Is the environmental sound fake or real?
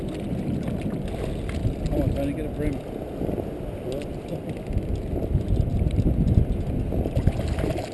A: real